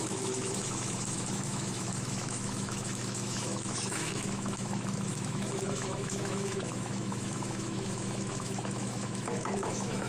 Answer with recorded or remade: remade